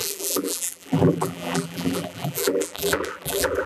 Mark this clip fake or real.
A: fake